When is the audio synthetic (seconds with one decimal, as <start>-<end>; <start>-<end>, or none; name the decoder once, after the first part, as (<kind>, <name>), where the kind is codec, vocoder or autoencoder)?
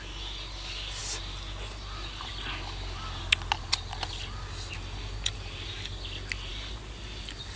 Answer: none